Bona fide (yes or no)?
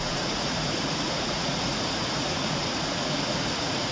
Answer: no